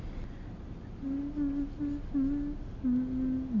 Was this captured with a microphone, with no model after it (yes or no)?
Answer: yes